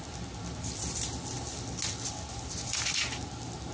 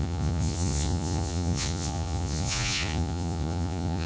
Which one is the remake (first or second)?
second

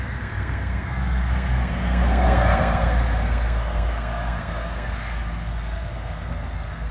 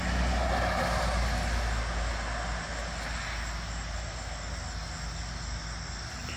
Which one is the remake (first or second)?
first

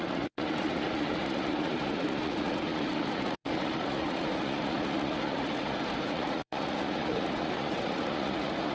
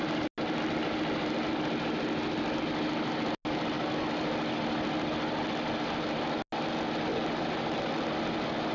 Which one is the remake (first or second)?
first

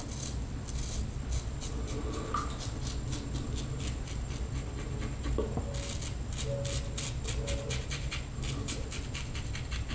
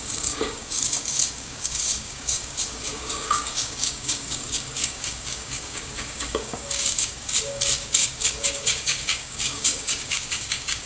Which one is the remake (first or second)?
second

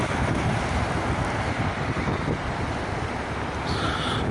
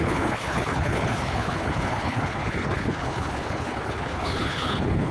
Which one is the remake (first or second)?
second